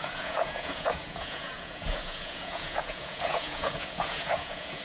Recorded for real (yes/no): no